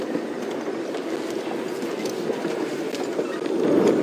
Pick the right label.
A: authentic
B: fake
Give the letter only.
A